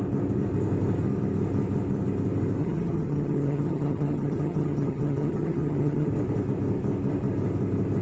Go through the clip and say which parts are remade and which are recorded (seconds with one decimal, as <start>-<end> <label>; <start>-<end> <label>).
0.0-2.6 recorded; 2.6-6.1 remade; 6.1-8.0 recorded